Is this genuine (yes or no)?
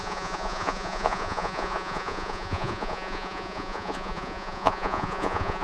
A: no